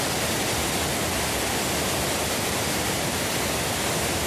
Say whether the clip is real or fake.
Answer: real